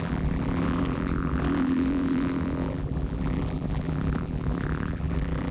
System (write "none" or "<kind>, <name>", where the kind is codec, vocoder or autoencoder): vocoder, BigVGAN v2